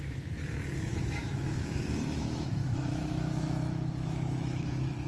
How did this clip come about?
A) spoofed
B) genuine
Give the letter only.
A